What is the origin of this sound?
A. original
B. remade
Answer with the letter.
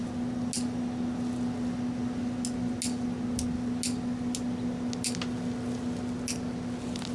A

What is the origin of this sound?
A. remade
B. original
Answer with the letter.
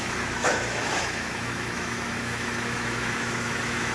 A